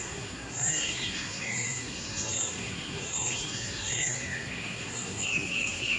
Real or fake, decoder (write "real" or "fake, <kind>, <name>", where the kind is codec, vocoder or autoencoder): fake, codec, SNAC